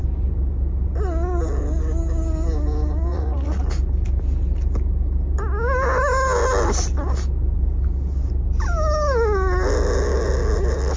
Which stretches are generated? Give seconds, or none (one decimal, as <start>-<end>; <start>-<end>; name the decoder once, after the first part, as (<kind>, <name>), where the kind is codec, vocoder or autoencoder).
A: 3.1-3.6 (vocoder, Vocos)